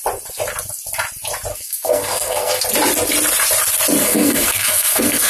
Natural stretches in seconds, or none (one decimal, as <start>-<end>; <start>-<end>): 0.0-1.5; 2.6-4.0